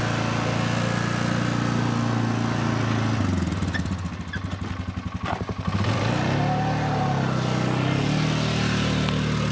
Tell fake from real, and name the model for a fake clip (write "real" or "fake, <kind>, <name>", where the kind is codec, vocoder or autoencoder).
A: real